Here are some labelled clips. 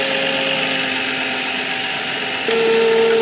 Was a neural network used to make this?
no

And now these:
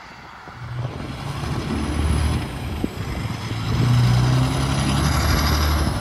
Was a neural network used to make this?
no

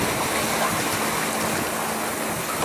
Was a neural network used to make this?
no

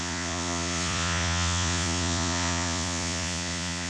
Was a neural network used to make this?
yes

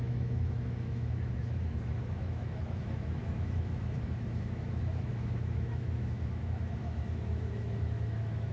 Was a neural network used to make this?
yes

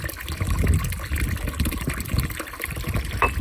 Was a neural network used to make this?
no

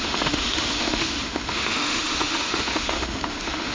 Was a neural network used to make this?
yes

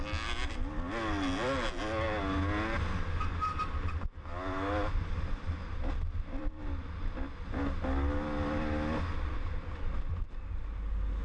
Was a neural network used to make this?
no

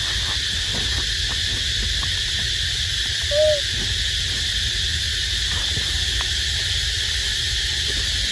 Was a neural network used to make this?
no